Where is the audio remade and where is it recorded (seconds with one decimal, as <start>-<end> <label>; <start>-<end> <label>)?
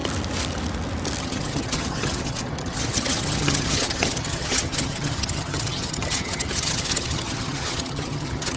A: 0.0-1.2 recorded; 1.2-8.6 remade